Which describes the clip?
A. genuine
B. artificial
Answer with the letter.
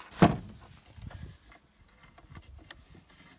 A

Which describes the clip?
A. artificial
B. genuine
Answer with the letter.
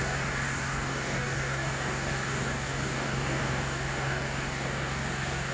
A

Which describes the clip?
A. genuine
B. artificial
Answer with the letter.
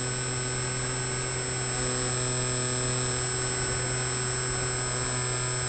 A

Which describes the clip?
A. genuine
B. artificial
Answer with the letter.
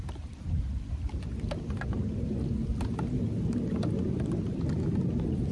A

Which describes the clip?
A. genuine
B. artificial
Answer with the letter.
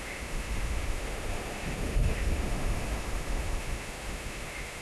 B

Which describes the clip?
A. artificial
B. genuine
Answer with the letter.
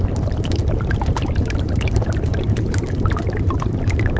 A